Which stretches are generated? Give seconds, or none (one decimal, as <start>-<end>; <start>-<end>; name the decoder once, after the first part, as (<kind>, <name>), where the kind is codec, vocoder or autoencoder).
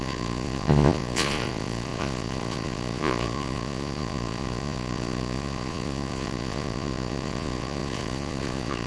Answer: 0.0-8.9 (vocoder, Vocos)